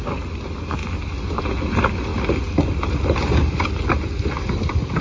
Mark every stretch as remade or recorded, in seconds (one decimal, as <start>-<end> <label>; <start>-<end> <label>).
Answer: 0.0-5.0 recorded